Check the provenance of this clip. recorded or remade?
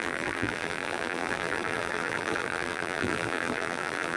remade